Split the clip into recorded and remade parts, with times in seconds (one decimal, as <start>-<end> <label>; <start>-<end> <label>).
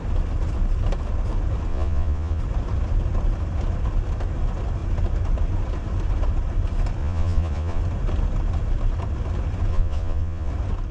0.0-1.7 recorded; 1.7-2.4 remade; 2.4-7.0 recorded; 7.0-7.8 remade; 7.8-9.7 recorded; 9.7-10.5 remade; 10.5-10.9 recorded